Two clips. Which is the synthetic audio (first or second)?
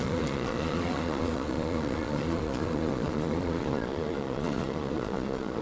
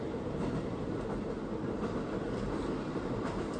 first